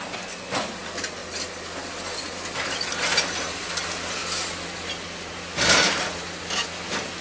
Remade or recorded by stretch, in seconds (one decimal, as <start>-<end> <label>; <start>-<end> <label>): 0.0-7.2 recorded